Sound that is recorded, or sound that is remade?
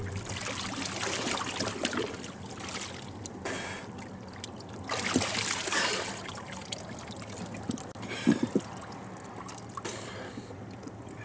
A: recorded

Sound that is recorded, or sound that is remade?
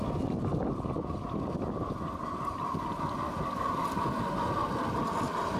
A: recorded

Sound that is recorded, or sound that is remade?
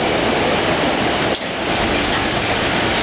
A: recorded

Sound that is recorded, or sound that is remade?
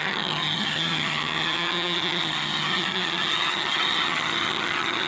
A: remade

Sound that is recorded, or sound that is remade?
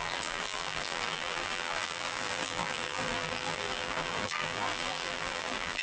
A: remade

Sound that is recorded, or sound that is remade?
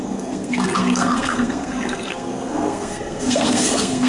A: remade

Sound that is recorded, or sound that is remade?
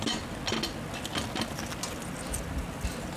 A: recorded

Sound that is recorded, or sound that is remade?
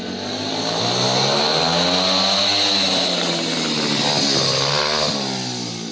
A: recorded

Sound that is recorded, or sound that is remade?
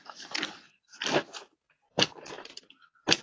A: recorded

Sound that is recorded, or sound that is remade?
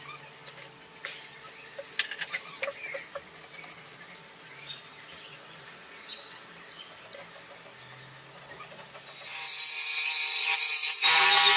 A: recorded